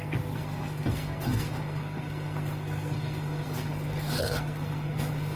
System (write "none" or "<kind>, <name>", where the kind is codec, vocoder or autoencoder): codec, SNAC